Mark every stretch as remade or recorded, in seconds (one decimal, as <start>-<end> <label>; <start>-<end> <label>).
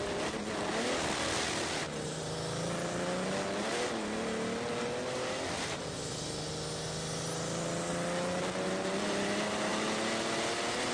0.0-10.9 recorded